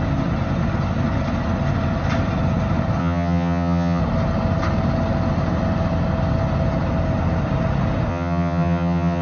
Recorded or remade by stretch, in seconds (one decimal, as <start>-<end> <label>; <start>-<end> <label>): 0.0-3.0 recorded; 3.0-4.0 remade; 4.0-8.1 recorded; 8.1-9.2 remade